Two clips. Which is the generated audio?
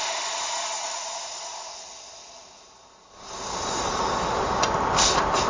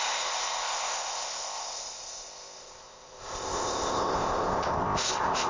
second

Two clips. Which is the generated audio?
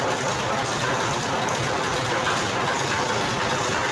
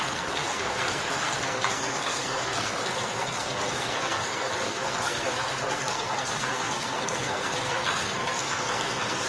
second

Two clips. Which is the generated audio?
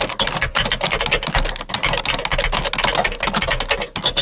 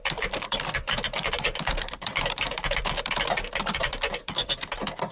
second